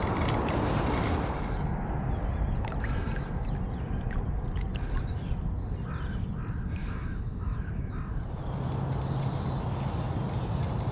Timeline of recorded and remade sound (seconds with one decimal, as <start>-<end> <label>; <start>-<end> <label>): 0.0-6.8 recorded; 6.8-7.9 remade; 7.9-10.9 recorded